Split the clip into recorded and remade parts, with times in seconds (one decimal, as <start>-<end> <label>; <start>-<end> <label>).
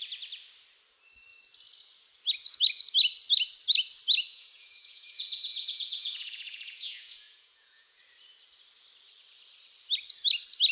0.0-4.3 recorded; 4.3-8.0 remade; 8.0-10.7 recorded